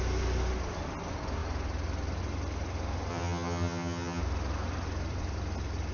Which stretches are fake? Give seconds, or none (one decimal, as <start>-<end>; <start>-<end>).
3.1-4.2